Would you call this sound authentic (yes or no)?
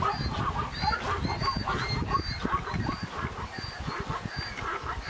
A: yes